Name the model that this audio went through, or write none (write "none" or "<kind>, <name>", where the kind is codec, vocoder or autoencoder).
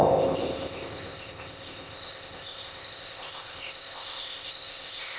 codec, ZipCodec